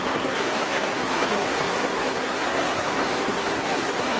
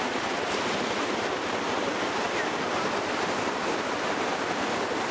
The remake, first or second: first